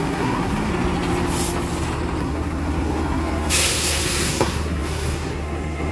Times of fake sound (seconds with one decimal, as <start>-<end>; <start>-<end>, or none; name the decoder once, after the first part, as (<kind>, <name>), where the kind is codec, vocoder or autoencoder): 0.0-0.7 (codec, SNAC); 2.2-5.9